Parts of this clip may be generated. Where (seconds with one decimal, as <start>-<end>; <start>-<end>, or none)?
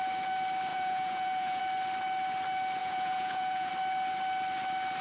0.7-1.6; 2.8-3.7